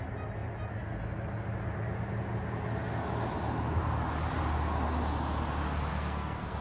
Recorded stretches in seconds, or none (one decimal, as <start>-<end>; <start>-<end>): 0.0-5.9